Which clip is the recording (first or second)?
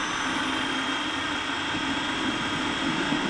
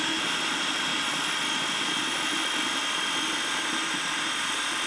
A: second